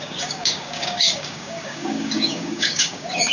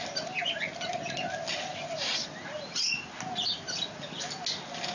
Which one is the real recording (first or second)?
second